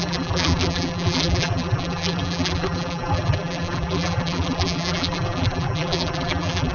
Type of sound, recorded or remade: remade